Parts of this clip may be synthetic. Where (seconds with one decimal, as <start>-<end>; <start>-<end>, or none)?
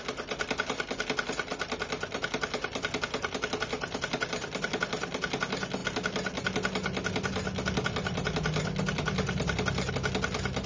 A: none